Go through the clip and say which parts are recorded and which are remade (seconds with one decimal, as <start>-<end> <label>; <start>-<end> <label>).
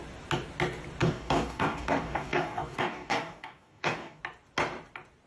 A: 0.0-1.0 recorded; 1.0-4.2 remade; 4.2-5.3 recorded